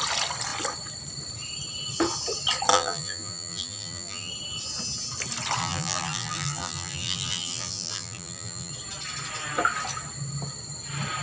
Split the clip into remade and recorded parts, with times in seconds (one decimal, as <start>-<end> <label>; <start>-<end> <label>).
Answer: 0.0-2.7 recorded; 2.7-4.3 remade; 4.3-5.6 recorded; 5.6-8.7 remade; 8.7-11.2 recorded